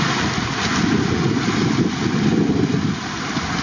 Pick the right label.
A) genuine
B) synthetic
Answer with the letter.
A